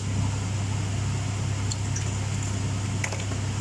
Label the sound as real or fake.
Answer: real